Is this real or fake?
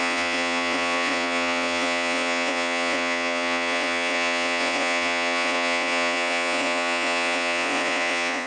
fake